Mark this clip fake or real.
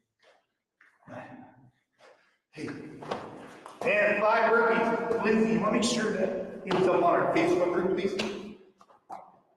fake